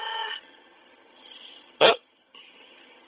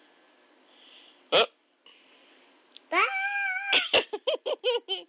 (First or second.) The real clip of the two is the second